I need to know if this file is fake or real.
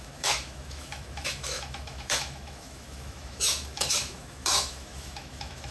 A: fake